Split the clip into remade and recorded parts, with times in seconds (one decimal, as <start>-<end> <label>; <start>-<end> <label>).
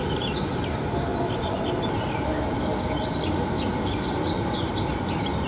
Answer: 0.0-5.5 recorded